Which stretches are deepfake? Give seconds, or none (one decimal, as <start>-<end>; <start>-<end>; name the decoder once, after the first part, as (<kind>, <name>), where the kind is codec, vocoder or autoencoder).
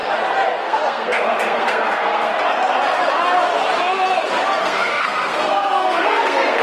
0.6-2.3 (codec, SNAC); 4.6-6.6